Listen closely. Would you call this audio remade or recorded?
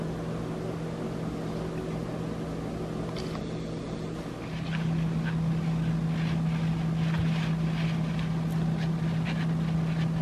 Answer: recorded